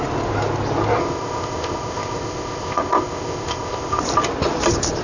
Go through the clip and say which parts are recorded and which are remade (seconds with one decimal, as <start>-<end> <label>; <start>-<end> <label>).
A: 0.0-1.0 recorded; 1.0-4.0 remade; 4.0-5.0 recorded